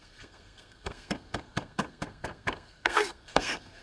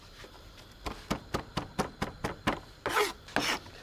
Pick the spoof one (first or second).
first